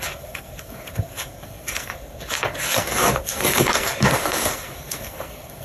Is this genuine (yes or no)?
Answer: no